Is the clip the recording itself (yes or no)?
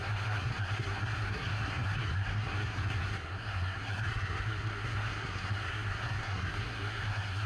no